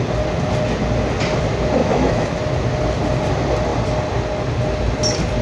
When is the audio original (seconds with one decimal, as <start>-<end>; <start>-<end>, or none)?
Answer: 0.0-1.8; 2.4-5.4